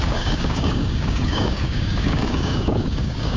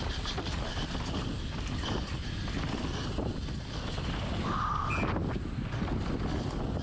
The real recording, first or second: second